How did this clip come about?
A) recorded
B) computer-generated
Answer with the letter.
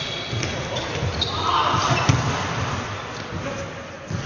A